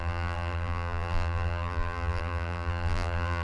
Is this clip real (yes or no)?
no